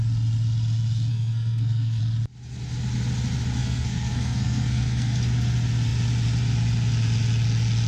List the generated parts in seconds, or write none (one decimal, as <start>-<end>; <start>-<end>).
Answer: 1.1-2.0; 3.6-5.2